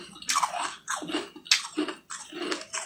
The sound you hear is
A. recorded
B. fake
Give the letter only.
A